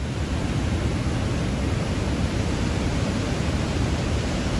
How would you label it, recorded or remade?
remade